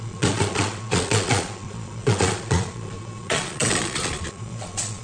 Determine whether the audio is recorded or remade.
remade